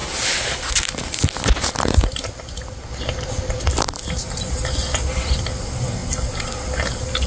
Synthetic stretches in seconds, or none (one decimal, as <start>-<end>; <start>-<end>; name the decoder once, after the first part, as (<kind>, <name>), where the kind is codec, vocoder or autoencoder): none